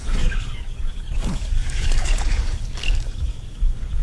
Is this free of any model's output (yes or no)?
no